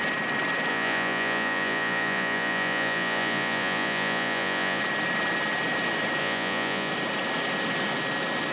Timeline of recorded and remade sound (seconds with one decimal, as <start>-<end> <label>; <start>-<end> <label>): 0.0-0.7 recorded; 0.7-4.8 remade; 4.8-6.2 recorded; 6.2-6.9 remade; 6.9-8.5 recorded